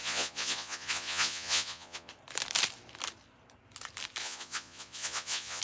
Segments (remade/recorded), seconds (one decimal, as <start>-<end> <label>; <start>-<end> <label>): 0.0-2.1 remade; 2.1-4.2 recorded; 4.2-5.6 remade